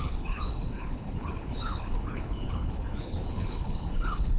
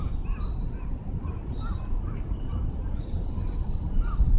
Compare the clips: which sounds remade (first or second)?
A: first